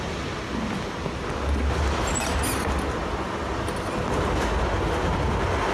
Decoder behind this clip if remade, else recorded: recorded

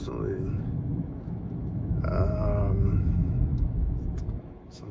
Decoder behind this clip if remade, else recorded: remade, autoencoder, DAC-VAE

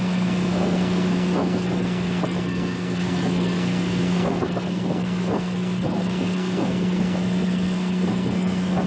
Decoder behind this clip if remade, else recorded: remade, codec, SNAC